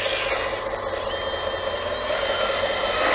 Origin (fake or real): real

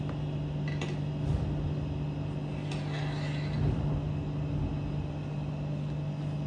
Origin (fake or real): real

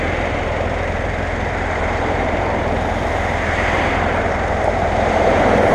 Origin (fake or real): fake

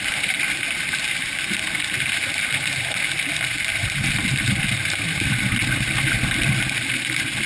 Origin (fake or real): fake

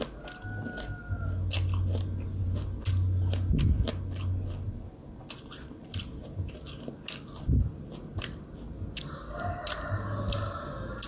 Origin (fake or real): real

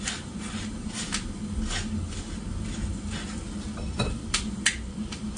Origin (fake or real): real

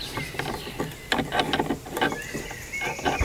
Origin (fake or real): real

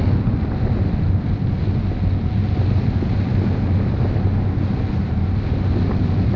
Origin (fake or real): real